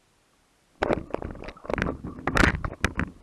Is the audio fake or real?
real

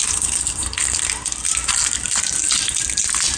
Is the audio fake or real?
real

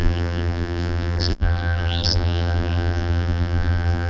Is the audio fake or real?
fake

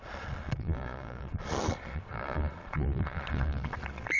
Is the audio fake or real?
fake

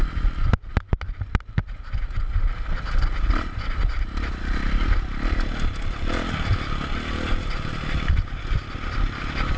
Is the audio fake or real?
real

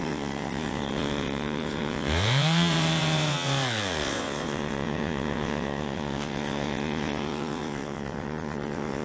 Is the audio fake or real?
fake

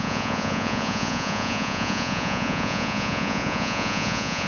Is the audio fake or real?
fake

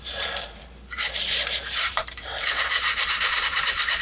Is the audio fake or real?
fake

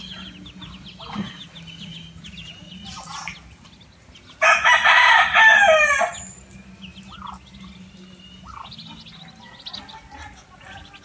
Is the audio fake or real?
real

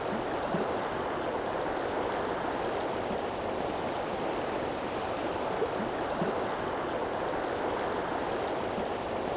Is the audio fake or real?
real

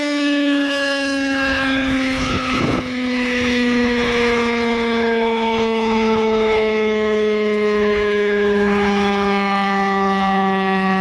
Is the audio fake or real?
fake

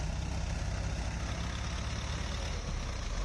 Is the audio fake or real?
real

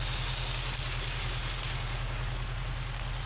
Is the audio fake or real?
real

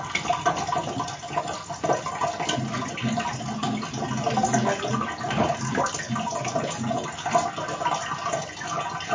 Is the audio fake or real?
real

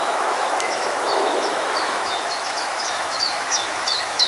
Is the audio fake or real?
fake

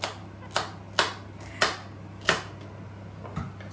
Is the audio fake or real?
real